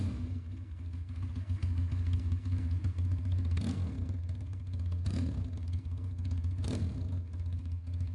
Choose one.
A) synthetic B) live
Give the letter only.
A